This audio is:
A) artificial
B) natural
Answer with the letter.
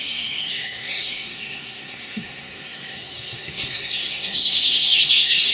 A